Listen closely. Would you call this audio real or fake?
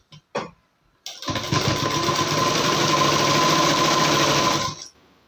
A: real